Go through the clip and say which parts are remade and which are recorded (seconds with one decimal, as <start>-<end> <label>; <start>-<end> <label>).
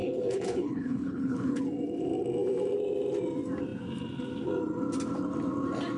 0.0-1.6 remade; 1.6-6.0 recorded